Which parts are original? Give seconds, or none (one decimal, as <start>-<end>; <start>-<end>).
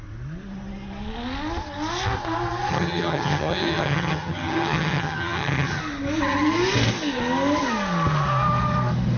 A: 0.0-2.7; 5.8-9.2